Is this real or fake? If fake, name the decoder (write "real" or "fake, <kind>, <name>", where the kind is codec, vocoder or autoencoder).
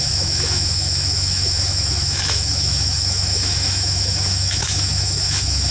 fake, autoencoder, DAC-VAE